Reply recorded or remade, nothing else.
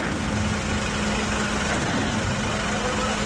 recorded